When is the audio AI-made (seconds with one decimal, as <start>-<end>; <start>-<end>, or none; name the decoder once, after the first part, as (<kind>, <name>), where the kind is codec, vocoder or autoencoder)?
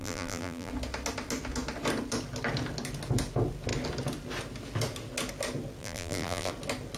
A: 0.0-0.7 (vocoder, BigVGAN v2); 5.8-6.5